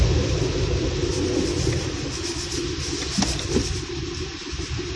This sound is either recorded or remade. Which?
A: recorded